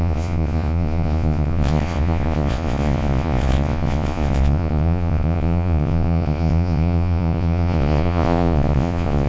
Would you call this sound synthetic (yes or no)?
yes